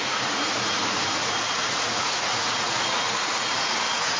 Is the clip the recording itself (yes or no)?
no